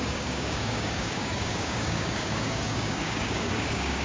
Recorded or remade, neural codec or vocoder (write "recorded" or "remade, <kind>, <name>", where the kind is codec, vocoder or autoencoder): remade, codec, DAC